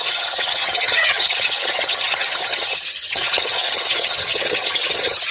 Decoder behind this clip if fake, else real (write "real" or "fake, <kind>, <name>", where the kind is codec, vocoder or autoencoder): fake, vocoder, HiFi-GAN